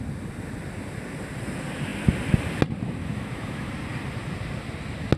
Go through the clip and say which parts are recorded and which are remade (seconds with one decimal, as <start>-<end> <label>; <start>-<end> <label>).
0.0-3.0 recorded; 3.0-3.7 remade; 3.7-5.2 recorded